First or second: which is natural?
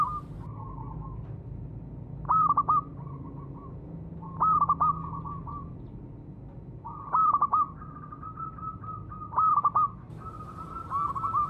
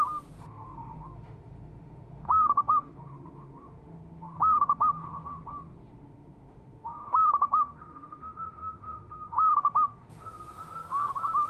first